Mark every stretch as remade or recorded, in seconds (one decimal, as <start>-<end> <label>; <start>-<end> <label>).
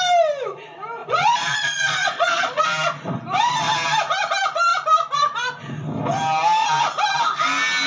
0.0-1.0 recorded; 1.0-2.6 remade; 2.6-7.9 recorded